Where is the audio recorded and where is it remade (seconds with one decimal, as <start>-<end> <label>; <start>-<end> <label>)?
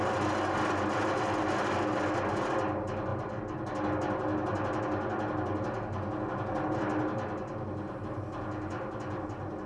0.0-9.7 recorded